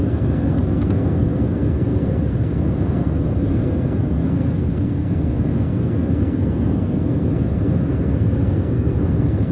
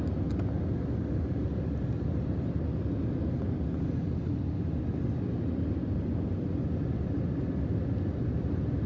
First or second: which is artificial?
first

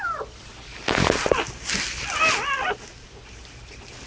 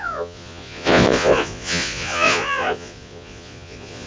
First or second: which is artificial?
second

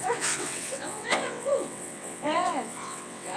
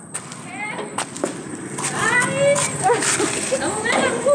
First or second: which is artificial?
first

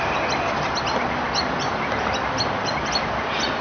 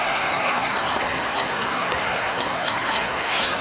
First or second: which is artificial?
second